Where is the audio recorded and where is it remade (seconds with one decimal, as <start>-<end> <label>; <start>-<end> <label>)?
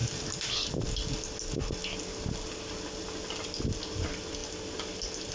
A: 0.0-0.7 remade; 0.7-5.3 recorded